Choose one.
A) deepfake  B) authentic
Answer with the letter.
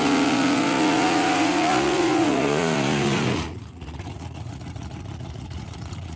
A